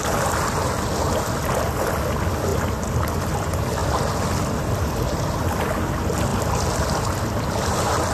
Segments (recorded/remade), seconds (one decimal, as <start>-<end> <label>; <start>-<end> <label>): 0.0-8.1 recorded